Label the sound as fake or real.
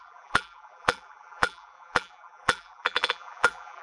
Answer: fake